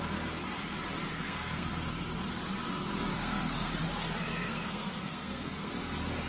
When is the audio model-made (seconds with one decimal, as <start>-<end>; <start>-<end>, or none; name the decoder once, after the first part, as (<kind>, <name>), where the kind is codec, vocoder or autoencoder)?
1.1-1.7 (codec, SNAC); 3.1-3.7; 4.3-5.7